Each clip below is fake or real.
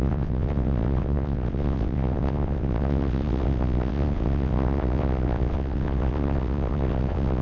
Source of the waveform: fake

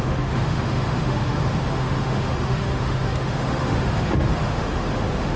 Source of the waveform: fake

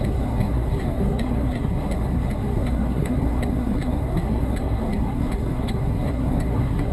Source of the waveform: fake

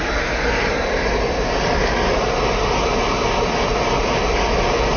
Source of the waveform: real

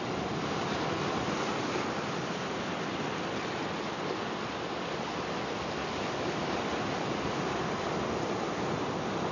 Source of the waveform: real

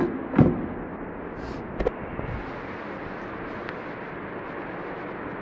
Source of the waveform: real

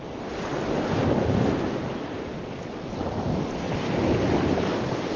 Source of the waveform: real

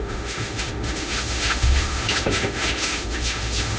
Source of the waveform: fake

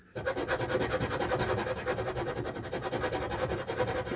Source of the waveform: real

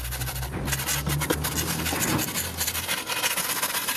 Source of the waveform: real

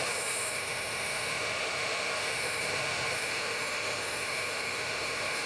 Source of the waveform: fake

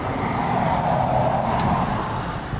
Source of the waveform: real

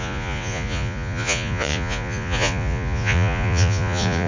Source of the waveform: fake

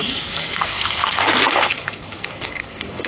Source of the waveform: fake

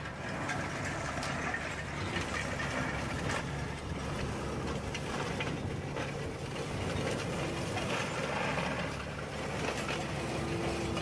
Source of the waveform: real